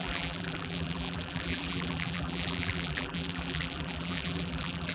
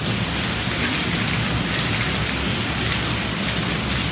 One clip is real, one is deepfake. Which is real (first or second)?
second